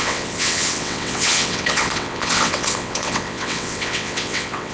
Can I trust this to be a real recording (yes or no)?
no